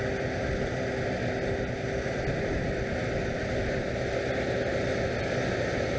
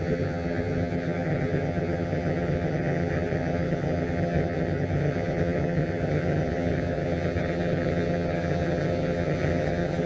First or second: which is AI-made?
second